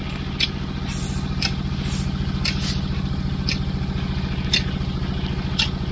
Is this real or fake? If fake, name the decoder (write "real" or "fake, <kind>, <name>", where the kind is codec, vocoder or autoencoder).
real